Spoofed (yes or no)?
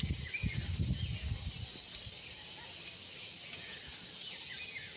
no